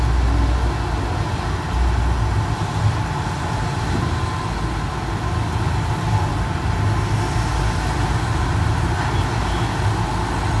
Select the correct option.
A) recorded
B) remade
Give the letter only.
A